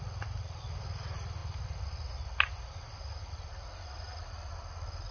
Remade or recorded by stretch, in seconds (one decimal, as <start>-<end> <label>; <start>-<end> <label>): 0.0-5.1 recorded